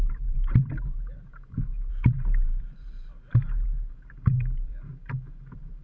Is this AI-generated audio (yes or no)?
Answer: yes